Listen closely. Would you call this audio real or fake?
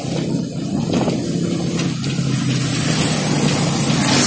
real